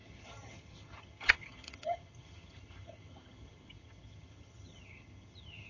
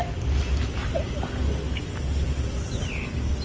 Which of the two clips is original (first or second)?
second